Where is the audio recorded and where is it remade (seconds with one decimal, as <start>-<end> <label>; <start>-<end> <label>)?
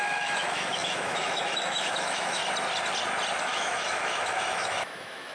0.0-2.4 remade; 2.4-3.4 recorded; 3.4-5.3 remade